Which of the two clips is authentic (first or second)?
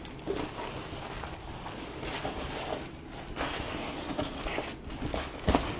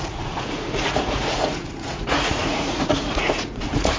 first